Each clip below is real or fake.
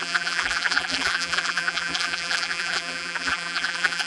fake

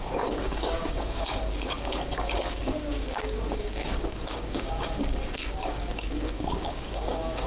fake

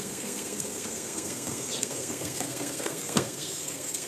fake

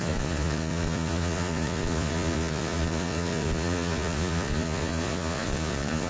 fake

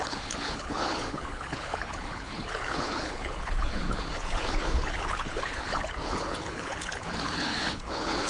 fake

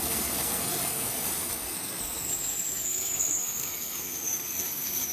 fake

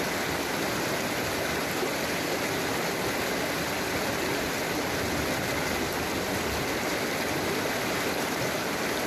real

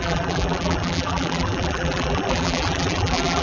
fake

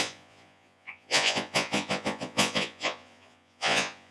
fake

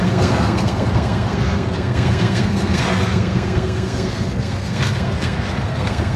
fake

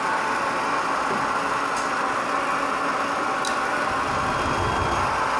real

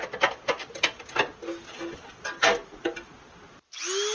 real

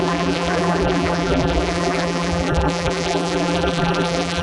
fake